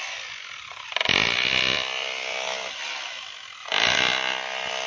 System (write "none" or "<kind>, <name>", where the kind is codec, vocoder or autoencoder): none